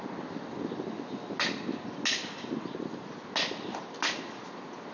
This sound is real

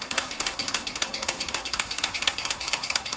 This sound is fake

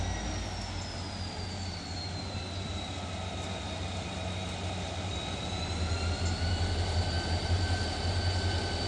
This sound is real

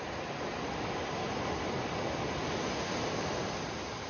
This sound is real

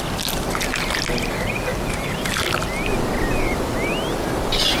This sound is real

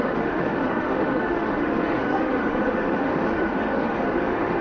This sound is fake